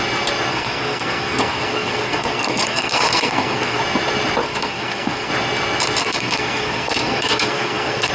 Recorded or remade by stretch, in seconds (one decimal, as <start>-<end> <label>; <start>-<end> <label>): 0.0-0.5 recorded; 0.5-3.8 remade; 3.8-4.4 recorded; 4.4-5.3 remade; 5.3-6.0 recorded; 6.0-8.1 remade